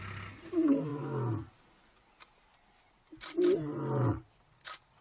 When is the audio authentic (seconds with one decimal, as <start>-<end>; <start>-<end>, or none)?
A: 0.0-5.0